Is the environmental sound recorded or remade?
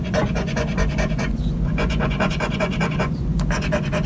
remade